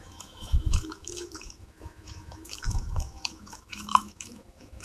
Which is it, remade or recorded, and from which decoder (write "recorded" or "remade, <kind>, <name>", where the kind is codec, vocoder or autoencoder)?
remade, autoencoder, DAC-VAE